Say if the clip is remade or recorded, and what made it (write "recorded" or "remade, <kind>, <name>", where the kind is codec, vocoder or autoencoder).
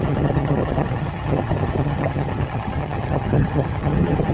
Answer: remade, vocoder, HiFi-GAN